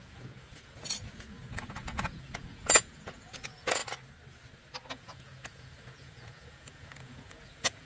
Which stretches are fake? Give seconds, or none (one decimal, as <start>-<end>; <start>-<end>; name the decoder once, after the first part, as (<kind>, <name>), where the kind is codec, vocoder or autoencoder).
0.0-3.8 (vocoder, Vocos); 4.9-7.8